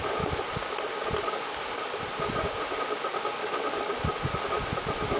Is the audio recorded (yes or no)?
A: yes